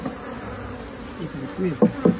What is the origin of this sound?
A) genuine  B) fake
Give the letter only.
A